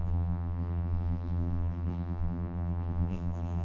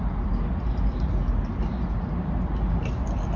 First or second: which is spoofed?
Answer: first